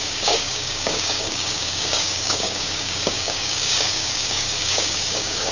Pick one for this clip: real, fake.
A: fake